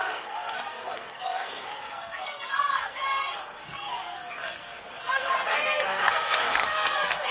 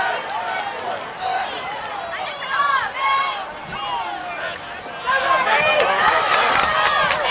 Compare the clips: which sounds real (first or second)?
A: second